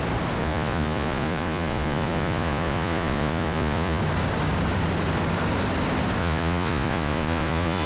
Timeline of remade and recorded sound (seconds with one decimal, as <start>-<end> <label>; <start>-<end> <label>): 0.0-0.4 recorded; 0.4-4.0 remade; 4.0-6.2 recorded; 6.2-7.9 remade